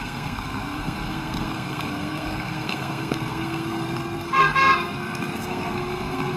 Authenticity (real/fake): fake